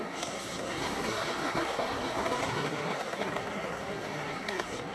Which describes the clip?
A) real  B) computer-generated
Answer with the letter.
B